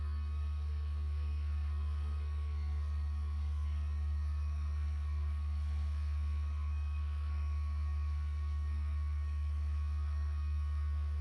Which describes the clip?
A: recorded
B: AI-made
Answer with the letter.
B